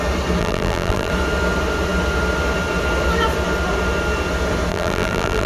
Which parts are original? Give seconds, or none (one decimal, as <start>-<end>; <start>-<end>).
0.0-0.4; 1.1-4.7